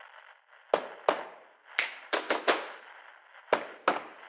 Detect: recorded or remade recorded